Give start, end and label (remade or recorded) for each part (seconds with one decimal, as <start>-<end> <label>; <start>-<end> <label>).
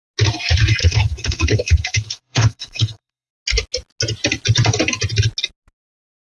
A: 0.0-0.8 recorded; 0.8-3.3 remade; 3.3-6.3 recorded